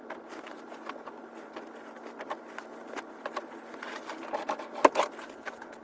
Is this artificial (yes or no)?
no